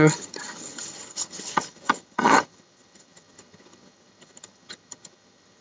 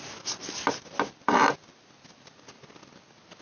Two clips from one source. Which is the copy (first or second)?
first